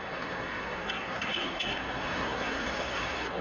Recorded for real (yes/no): no